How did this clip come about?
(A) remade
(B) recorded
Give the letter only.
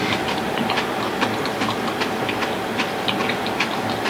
B